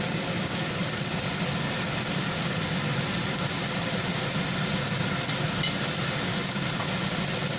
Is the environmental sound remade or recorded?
recorded